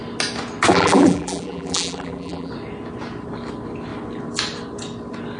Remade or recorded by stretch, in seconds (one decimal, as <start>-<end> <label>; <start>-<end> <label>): 0.0-0.7 recorded; 0.7-2.5 remade; 2.5-5.4 recorded